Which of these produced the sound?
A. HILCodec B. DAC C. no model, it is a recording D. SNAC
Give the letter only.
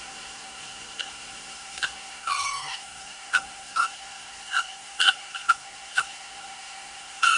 D